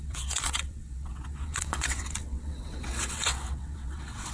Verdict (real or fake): fake